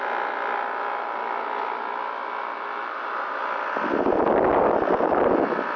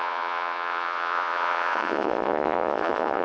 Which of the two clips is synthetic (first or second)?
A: second